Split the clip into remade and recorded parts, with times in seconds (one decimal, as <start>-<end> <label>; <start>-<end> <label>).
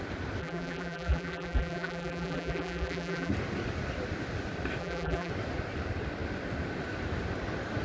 0.0-0.4 recorded; 0.4-3.3 remade; 3.3-4.8 recorded; 4.8-5.3 remade; 5.3-7.8 recorded